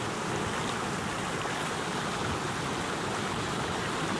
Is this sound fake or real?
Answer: real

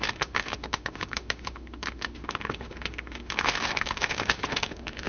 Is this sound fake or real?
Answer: fake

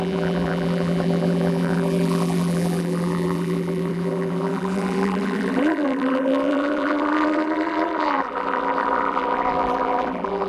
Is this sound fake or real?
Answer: fake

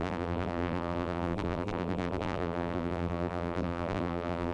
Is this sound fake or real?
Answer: fake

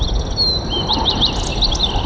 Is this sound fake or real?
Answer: real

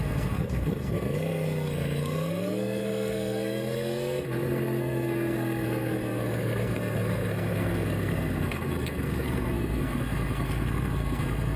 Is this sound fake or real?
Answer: fake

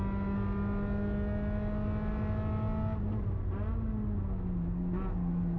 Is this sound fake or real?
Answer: real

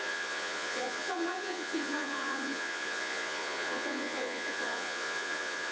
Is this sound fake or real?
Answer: fake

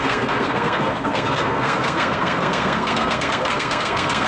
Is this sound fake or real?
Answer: fake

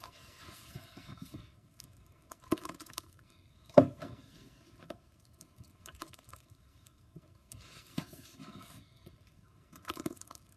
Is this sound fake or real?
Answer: fake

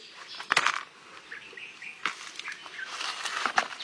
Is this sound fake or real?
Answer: real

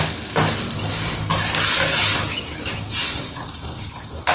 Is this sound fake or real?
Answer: real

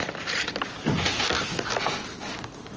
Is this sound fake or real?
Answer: real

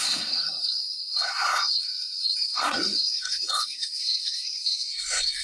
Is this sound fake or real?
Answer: fake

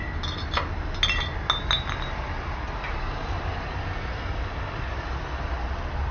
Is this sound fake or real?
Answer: real